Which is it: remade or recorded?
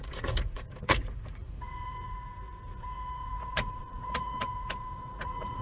remade